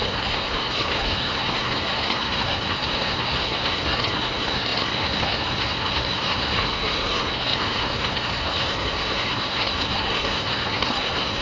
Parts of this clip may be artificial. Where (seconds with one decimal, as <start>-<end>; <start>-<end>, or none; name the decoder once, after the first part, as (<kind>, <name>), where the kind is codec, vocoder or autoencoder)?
0.0-11.4 (codec, SNAC)